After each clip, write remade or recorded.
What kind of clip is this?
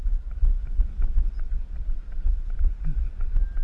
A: recorded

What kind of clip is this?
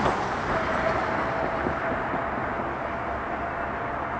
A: recorded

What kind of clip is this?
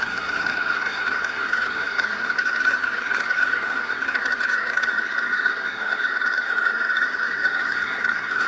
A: remade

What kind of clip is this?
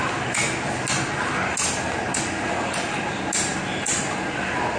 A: recorded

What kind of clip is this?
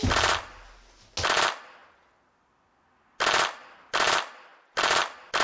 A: recorded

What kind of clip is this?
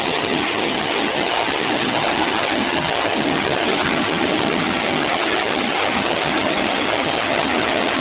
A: remade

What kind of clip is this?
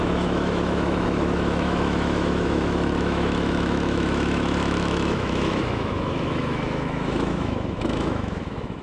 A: remade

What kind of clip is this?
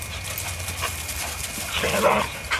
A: recorded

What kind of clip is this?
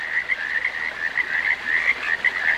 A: recorded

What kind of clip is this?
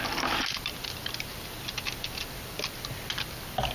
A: recorded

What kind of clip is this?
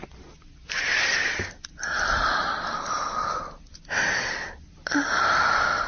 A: recorded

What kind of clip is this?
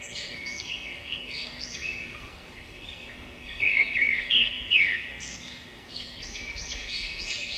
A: remade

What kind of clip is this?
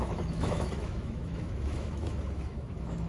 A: remade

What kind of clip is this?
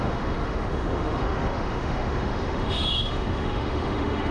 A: remade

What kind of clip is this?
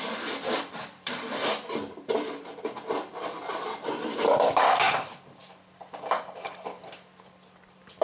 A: remade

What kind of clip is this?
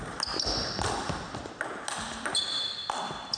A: recorded